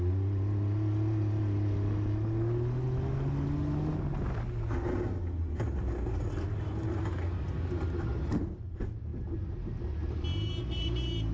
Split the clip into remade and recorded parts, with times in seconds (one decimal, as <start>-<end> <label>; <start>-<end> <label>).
0.0-11.3 recorded